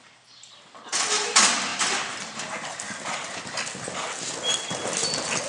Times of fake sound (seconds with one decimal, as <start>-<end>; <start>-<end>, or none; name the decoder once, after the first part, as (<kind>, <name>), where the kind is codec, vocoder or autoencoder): none